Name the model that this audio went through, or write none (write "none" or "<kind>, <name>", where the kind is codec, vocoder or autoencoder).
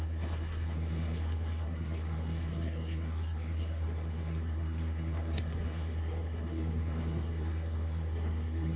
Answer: codec, SNAC